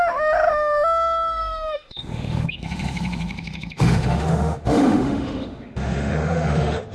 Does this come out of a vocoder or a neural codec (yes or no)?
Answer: yes